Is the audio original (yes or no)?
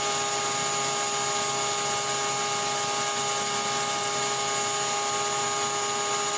yes